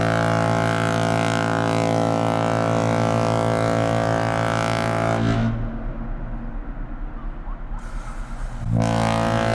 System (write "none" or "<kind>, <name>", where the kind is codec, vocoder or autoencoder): none